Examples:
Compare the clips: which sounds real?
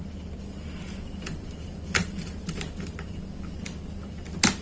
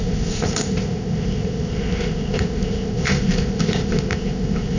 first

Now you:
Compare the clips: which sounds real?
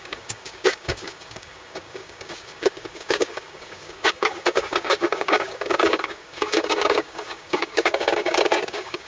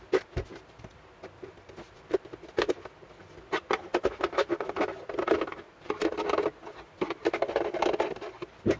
second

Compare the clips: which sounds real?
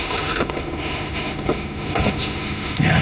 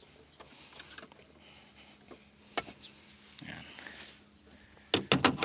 second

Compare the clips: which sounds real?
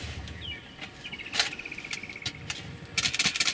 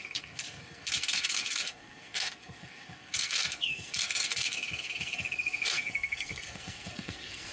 first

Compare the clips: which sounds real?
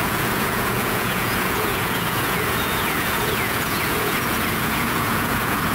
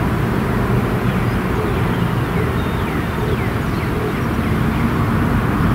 second